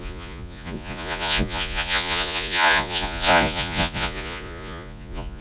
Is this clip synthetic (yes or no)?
yes